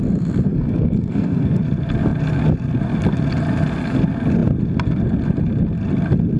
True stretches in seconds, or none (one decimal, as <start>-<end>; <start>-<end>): 0.0-0.5; 1.6-6.4